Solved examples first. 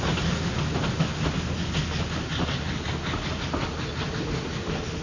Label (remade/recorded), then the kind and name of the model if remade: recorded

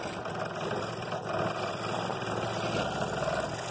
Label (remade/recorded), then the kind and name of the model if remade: recorded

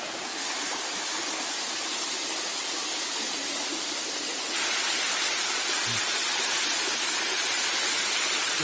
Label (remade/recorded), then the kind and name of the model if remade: recorded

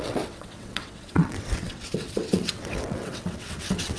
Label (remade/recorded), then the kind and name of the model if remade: remade, vocoder, WaveNeXt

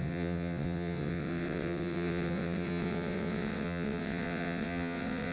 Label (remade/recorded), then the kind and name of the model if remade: remade, vocoder, WaveNeXt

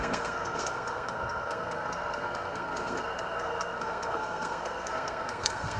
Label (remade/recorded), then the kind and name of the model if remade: remade, codec, SNAC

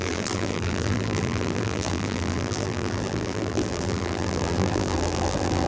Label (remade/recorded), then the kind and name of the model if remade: remade, vocoder, BigVGAN v2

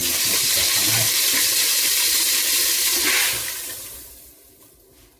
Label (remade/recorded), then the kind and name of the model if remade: recorded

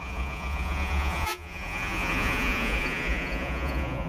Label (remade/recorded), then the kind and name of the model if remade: remade, vocoder, Vocos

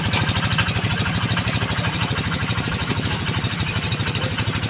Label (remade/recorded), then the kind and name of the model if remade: recorded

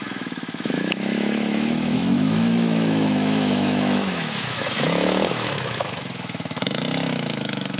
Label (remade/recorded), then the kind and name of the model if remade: remade, autoencoder, DAC-VAE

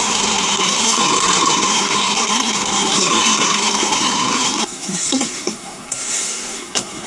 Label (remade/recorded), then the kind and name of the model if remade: remade, codec, SNAC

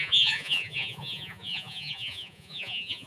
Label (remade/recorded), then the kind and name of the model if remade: remade, vocoder, Vocos